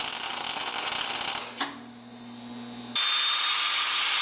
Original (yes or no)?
yes